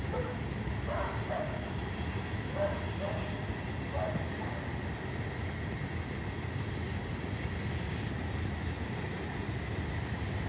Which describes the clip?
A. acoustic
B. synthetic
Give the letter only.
A